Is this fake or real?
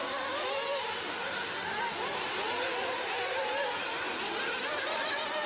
real